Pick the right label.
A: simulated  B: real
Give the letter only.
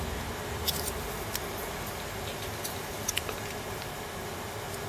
B